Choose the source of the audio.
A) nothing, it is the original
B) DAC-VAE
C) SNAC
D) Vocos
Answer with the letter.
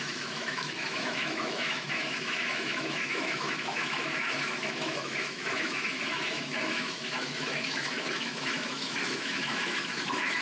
B